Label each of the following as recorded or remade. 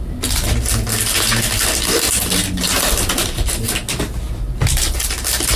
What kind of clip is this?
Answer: recorded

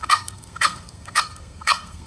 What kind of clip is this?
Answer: remade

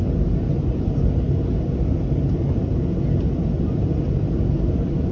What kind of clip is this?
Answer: recorded